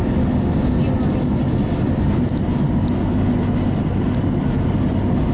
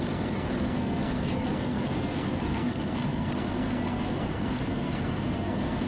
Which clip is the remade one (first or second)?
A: second